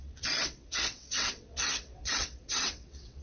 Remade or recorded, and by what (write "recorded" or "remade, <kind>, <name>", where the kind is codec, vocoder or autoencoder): remade, vocoder, WaveNeXt